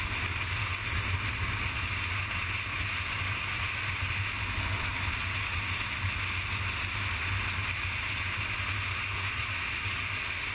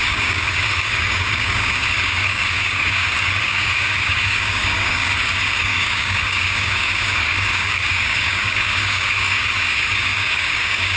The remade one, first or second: second